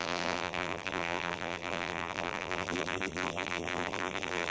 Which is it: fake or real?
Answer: fake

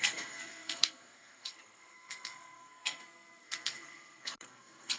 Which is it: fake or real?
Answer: fake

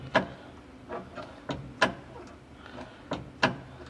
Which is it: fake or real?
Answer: real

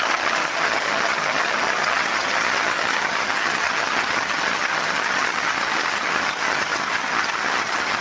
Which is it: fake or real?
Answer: fake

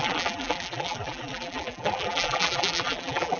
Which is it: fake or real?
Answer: fake